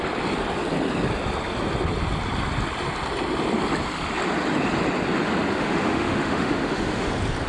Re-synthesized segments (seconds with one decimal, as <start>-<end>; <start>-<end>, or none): 5.5-7.1